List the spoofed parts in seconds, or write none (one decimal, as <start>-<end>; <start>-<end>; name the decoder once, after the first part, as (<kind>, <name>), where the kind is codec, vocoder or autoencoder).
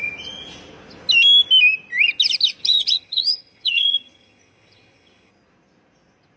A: 2.6-5.3 (vocoder, HiFi-GAN)